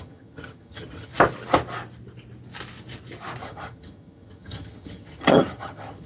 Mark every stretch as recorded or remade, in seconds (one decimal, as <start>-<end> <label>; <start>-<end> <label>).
0.0-1.1 remade; 1.1-3.4 recorded; 3.4-6.1 remade